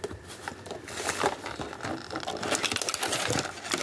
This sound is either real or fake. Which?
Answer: real